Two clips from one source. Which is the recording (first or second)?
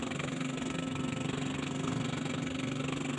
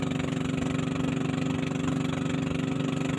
second